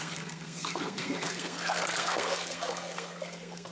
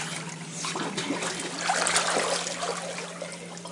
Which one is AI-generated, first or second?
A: first